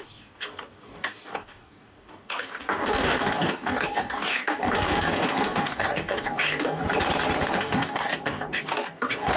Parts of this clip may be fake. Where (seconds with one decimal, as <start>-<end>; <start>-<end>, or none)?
0.0-6.8; 7.5-9.4